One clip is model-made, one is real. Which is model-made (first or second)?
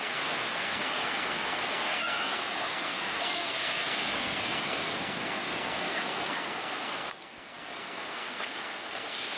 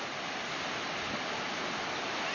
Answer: first